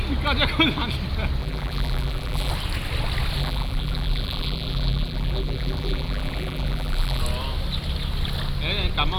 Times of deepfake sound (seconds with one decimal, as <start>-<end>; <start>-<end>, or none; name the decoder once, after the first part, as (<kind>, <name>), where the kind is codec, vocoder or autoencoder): 1.4-2.5 (vocoder, BigVGAN v2); 3.4-7.2